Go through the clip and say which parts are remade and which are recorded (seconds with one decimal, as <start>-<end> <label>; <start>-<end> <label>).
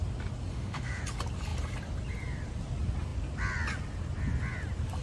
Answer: 0.0-0.5 recorded; 0.5-1.0 remade; 1.0-5.0 recorded